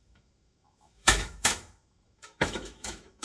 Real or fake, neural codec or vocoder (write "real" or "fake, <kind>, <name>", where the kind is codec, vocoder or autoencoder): fake, autoencoder, DAC-VAE